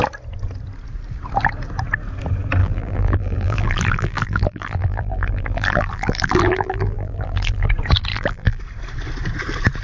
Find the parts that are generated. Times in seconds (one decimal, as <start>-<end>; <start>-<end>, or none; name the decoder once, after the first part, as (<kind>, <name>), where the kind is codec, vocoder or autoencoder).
2.6-7.7 (vocoder, BigVGAN v2); 8.1-8.6